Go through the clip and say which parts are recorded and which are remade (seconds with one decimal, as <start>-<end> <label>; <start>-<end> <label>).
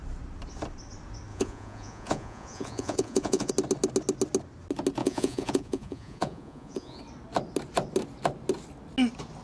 0.0-1.3 recorded; 1.3-3.5 remade; 3.5-5.0 recorded; 5.0-7.0 remade; 7.0-9.4 recorded